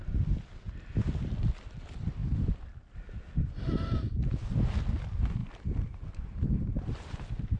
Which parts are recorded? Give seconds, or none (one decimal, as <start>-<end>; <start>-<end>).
0.0-5.4